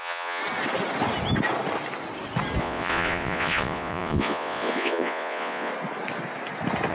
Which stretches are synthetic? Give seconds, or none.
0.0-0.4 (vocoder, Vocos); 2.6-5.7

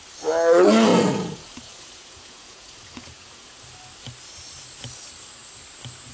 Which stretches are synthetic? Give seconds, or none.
0.9-3.6 (vocoder, Vocos)

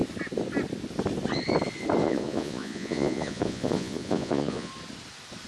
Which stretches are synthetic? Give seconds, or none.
2.0-4.7 (vocoder, Vocos)

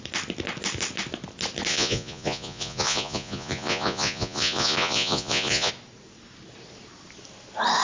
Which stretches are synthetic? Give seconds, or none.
1.7-5.7 (vocoder, Vocos)

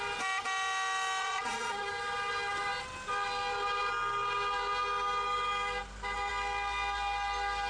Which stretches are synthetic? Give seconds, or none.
1.2-1.9 (vocoder, Vocos)

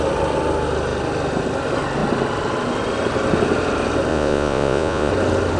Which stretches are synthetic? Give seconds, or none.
4.1-5.1 (vocoder, Vocos)